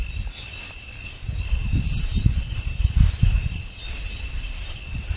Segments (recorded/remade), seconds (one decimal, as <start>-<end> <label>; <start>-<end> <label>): 0.0-5.2 recorded